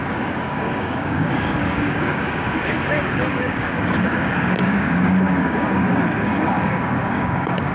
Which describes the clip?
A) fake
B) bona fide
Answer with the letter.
A